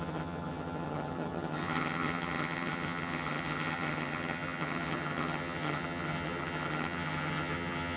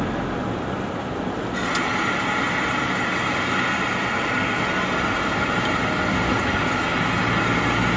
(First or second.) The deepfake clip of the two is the first